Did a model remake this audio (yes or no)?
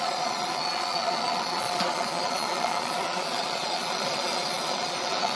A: yes